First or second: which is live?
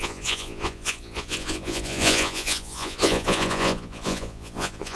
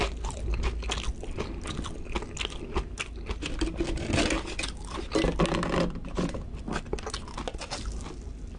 second